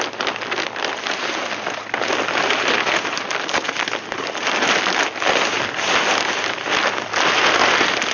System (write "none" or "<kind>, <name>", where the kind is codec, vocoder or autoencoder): none